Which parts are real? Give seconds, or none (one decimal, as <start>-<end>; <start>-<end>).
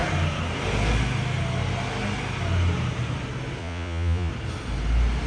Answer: 0.0-3.6; 4.3-5.3